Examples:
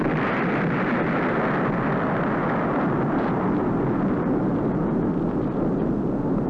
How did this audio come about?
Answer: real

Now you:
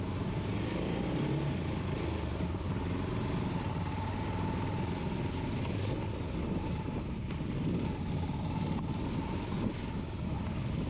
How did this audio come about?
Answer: real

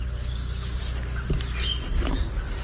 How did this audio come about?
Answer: real